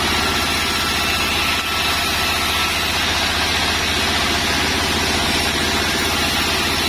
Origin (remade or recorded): recorded